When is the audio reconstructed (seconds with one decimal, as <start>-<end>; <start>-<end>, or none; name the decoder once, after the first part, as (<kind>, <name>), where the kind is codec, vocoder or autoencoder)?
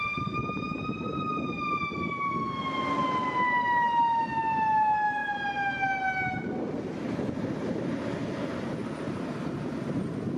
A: none